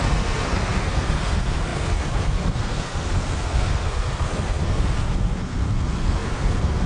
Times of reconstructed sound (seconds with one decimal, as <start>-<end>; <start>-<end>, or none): 0.0-6.9